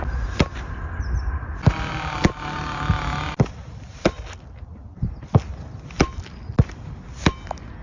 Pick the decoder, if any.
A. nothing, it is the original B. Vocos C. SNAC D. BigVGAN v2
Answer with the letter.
A